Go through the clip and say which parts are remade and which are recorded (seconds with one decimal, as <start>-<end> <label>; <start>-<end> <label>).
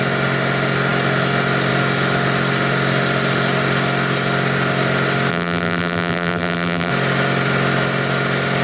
0.0-5.3 recorded; 5.3-6.9 remade; 6.9-8.6 recorded